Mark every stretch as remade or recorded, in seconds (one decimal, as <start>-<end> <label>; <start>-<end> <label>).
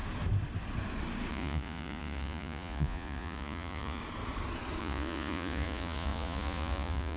0.0-1.3 recorded; 1.3-4.0 remade; 4.0-4.8 recorded; 4.8-7.2 remade